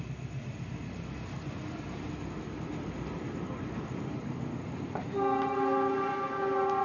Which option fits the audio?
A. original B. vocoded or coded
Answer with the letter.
A